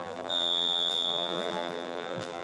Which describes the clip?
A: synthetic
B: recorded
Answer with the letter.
A